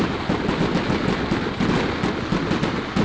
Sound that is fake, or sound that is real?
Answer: real